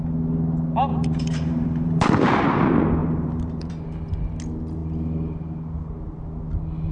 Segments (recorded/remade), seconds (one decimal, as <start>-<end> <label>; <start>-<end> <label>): 0.0-0.9 recorded; 0.9-2.0 remade; 2.0-3.0 recorded; 3.0-3.7 remade; 3.7-6.9 recorded